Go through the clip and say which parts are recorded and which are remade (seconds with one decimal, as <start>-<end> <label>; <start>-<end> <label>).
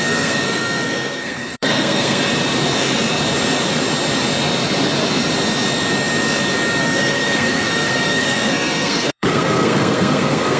0.0-2.2 remade; 2.2-6.8 recorded; 6.8-10.6 remade